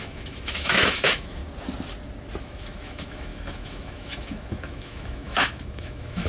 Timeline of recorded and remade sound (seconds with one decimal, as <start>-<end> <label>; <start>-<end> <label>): 0.0-1.4 remade; 1.4-2.4 recorded; 2.4-6.3 remade